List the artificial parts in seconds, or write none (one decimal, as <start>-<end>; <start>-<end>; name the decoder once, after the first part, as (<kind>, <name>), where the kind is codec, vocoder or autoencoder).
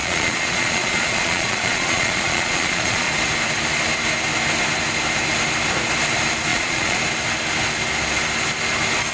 0.0-3.1 (vocoder, Vocos); 6.5-7.0